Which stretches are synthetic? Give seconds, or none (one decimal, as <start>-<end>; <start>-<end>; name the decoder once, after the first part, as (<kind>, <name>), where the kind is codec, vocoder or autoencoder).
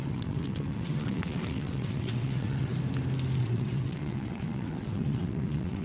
0.0-2.7 (vocoder, WaveNeXt); 3.4-5.8